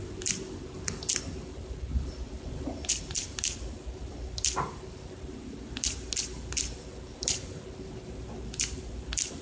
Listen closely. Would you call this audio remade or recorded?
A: remade